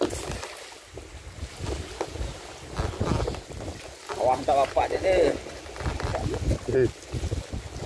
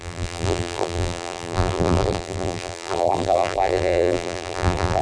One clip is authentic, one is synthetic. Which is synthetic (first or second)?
second